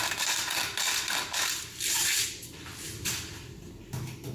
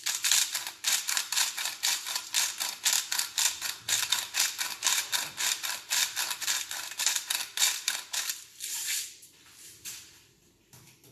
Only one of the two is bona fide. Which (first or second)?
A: first